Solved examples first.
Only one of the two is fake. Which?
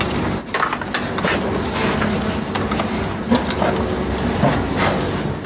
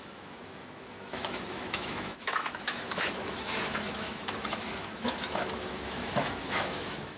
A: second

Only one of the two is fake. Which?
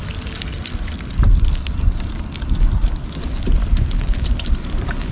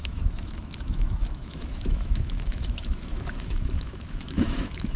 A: second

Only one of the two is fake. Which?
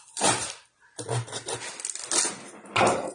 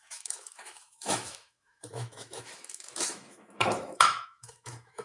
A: second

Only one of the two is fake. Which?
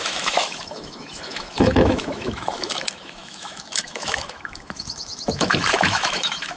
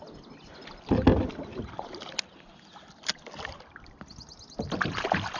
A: first